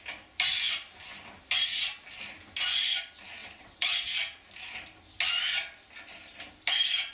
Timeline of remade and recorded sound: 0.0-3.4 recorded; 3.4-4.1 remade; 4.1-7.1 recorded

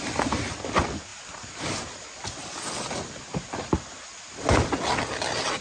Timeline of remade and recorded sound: 0.0-5.6 recorded